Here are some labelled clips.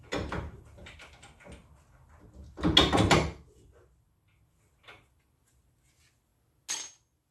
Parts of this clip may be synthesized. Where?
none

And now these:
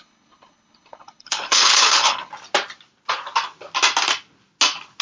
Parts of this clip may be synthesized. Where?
0.0-2.3 (codec, HILCodec)

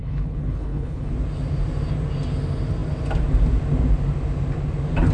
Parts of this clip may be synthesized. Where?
0.0-1.1 (codec, HILCodec)

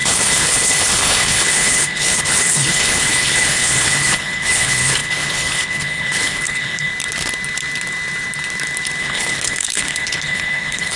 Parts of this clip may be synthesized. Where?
0.0-6.9 (codec, HILCodec); 9.0-11.0

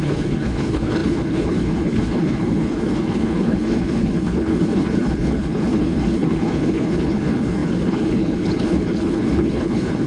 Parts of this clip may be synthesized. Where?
0.0-10.1 (codec, HILCodec)

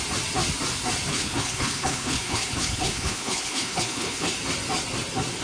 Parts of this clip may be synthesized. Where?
1.1-4.3 (codec, HILCodec)